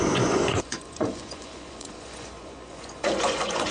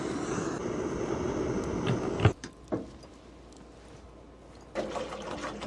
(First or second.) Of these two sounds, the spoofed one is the first